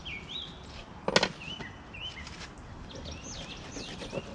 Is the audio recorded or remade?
recorded